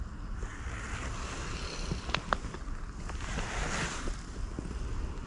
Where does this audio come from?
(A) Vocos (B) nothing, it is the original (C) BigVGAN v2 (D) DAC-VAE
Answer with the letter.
B